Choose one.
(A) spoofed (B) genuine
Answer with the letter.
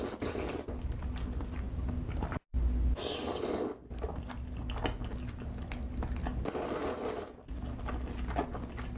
B